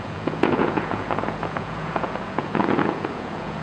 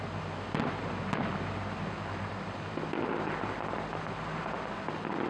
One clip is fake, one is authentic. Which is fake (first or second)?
first